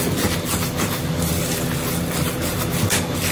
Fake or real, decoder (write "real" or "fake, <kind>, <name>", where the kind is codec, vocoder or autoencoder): real